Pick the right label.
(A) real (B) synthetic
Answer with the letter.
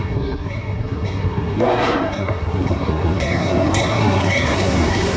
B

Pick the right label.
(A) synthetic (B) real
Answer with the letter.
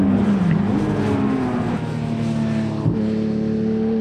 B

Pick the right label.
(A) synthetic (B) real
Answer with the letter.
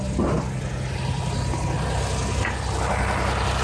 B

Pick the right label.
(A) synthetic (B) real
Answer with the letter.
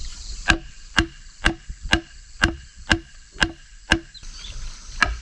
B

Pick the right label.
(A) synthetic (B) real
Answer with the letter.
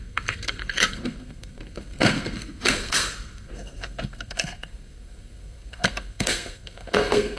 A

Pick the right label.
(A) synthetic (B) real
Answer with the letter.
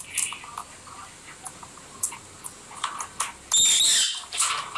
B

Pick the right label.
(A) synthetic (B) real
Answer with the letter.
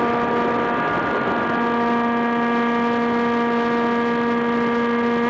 B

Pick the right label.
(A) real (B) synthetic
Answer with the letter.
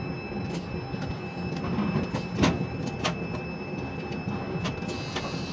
A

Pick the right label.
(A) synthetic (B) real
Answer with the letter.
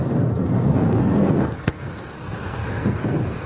A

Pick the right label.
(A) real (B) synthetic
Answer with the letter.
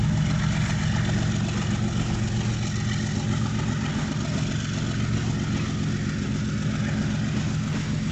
A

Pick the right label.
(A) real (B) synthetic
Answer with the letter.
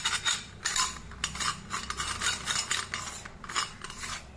A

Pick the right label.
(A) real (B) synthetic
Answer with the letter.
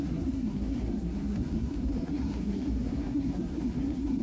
B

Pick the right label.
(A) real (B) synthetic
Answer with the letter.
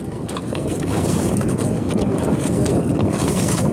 B